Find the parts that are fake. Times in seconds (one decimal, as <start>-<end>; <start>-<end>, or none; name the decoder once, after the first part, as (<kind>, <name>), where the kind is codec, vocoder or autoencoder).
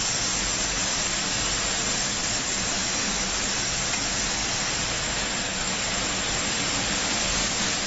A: none